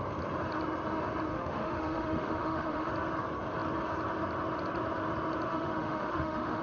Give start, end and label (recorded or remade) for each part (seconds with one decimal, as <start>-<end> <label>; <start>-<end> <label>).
0.0-1.3 recorded; 1.3-2.9 remade; 2.9-5.5 recorded; 5.5-6.6 remade

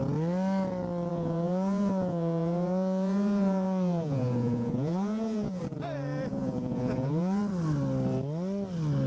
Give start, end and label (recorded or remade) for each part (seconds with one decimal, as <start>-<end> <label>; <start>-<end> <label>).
0.0-1.1 recorded; 1.1-5.6 remade; 5.6-6.3 recorded; 6.3-7.4 remade; 7.4-9.1 recorded

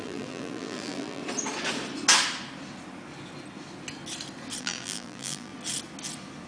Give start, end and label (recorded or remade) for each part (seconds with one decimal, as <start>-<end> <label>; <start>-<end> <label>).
0.0-1.2 remade; 1.2-4.6 recorded; 4.6-5.5 remade; 5.5-6.5 recorded

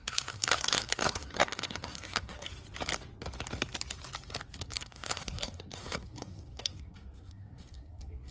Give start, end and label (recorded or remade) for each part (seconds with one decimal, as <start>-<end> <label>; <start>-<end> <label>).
0.0-2.5 remade; 2.5-4.6 recorded; 4.6-8.3 remade

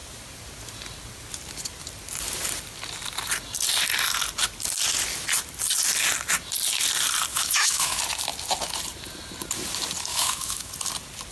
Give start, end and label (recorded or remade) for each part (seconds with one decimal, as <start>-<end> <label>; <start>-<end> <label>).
0.0-7.3 recorded; 7.3-8.0 remade; 8.0-10.1 recorded; 10.1-10.7 remade; 10.7-11.3 recorded

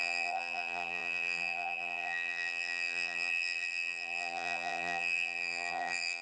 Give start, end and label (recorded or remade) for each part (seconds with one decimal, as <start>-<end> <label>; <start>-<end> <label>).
0.0-6.2 remade